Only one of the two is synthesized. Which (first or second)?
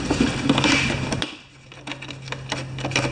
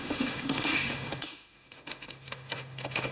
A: second